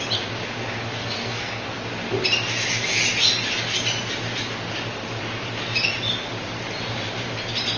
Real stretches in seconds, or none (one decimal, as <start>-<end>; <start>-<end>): 0.0-1.0; 1.7-7.8

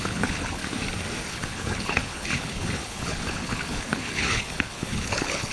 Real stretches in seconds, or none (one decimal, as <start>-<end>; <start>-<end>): 0.6-1.3

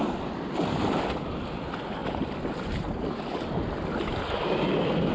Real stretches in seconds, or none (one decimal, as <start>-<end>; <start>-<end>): 0.0-5.1